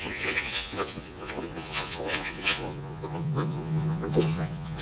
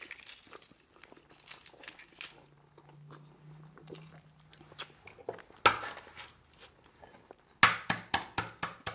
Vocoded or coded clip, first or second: first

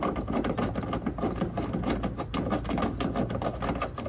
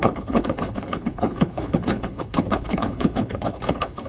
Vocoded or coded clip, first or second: second